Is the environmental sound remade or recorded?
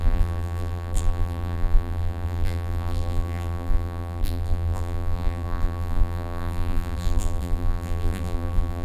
remade